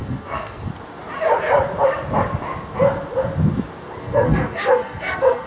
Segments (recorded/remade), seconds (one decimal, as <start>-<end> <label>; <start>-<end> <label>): 0.0-0.7 remade; 0.7-4.0 recorded; 4.0-5.5 remade